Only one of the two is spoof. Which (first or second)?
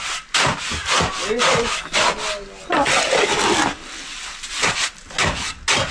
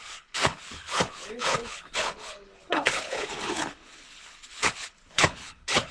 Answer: second